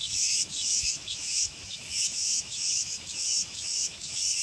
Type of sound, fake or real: fake